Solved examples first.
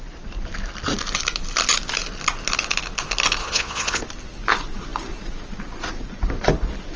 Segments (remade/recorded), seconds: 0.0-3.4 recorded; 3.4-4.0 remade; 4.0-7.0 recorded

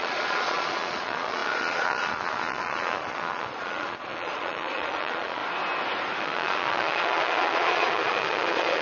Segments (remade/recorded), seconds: 0.0-5.4 remade; 5.4-6.2 recorded; 6.2-8.8 remade